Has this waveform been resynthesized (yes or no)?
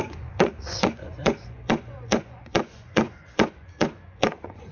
yes